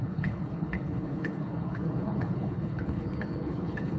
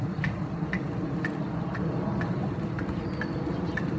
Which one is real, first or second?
second